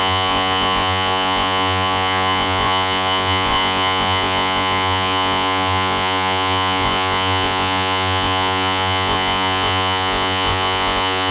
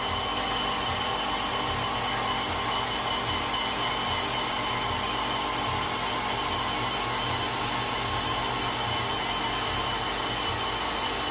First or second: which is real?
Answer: second